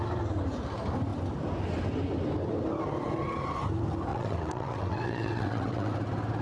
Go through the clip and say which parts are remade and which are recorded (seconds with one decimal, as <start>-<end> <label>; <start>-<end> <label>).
0.0-4.1 recorded; 4.1-5.9 remade; 5.9-6.4 recorded